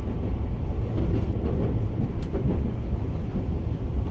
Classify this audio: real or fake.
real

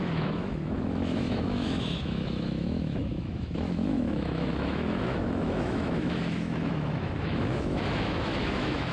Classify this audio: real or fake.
fake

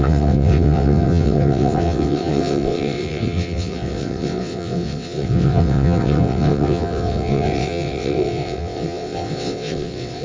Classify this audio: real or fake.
fake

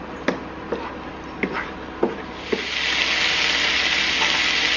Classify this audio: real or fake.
real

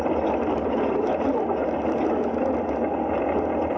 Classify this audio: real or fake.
real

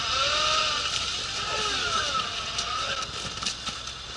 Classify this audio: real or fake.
real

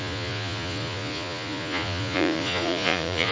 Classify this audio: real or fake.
fake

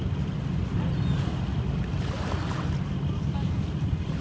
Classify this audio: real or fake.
real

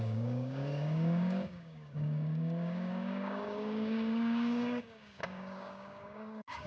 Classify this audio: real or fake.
fake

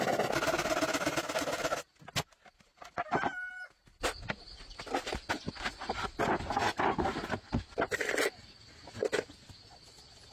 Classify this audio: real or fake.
real